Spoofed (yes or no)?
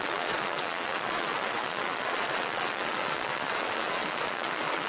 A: yes